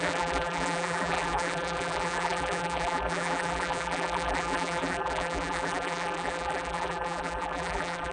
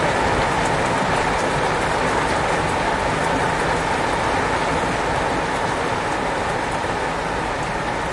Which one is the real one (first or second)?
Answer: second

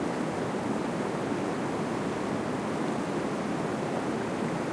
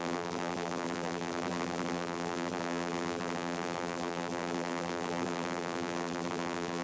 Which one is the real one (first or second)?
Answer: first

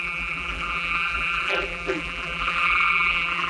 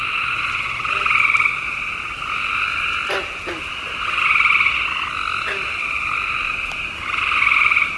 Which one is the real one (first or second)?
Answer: second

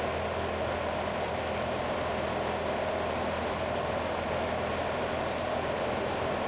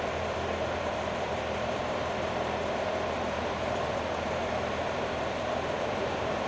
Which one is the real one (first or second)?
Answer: first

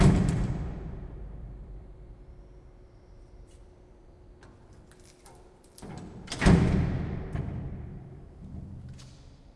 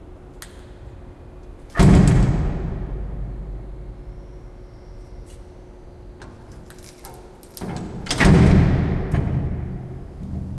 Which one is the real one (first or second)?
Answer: second